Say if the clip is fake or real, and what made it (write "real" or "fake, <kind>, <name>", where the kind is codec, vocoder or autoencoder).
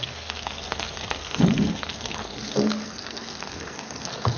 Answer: fake, codec, SNAC